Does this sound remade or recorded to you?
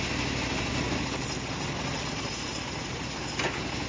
recorded